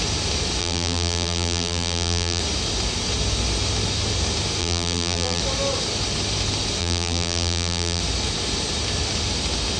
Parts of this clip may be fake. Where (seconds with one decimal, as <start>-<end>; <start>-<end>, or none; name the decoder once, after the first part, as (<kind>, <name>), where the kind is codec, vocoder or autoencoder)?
0.6-2.4 (vocoder, BigVGAN v2); 4.6-5.4; 6.8-8.0